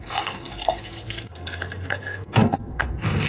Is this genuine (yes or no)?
no